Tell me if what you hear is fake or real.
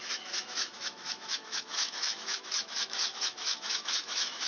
fake